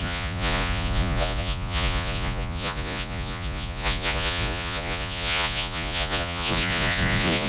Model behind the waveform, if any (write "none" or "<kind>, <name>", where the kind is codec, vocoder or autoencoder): vocoder, Vocos